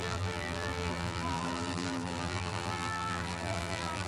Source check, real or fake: fake